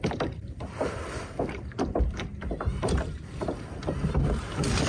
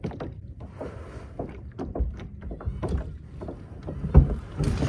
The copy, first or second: first